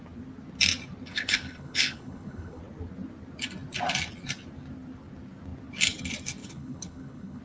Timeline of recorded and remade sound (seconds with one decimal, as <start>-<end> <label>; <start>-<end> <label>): 0.0-1.1 recorded; 1.1-2.6 remade; 2.6-6.4 recorded; 6.4-7.4 remade